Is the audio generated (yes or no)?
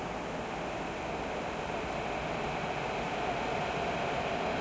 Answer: no